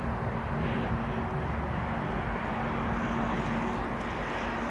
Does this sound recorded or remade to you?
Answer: recorded